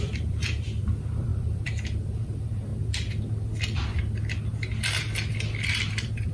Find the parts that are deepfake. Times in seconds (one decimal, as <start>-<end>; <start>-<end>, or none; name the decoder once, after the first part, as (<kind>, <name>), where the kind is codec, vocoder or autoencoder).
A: 0.0-2.7 (vocoder, BigVGAN v2); 5.7-6.3